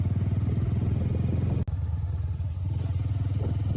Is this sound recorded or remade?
recorded